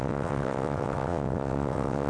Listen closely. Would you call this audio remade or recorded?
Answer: remade